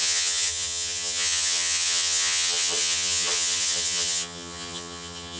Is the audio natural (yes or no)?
no